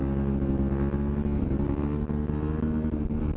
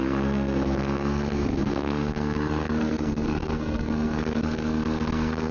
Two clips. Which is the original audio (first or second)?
first